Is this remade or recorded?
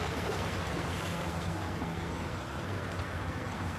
remade